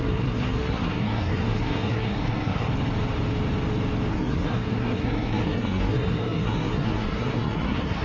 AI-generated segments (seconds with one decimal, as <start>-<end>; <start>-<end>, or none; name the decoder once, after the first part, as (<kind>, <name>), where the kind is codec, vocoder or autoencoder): 0.0-2.7 (codec, SNAC); 4.1-8.0